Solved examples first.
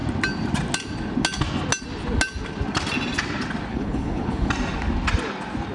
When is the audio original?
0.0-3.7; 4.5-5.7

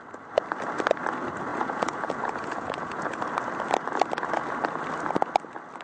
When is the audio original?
0.0-1.5; 3.2-5.8